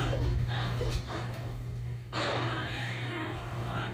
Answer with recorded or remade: remade